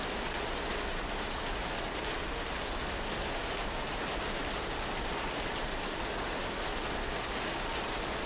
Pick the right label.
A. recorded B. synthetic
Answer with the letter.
A